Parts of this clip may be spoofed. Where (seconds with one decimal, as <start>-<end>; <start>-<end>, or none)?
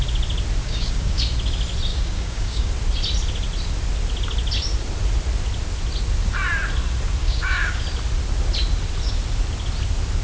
0.6-1.2; 1.9-2.7; 7.2-7.8